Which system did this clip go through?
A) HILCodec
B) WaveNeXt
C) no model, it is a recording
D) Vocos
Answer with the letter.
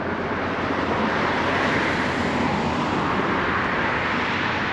C